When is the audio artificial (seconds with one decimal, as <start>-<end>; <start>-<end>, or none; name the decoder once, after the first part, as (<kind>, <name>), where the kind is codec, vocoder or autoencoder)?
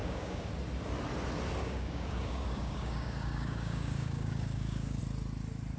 0.0-0.5 (codec, DAC); 1.6-5.0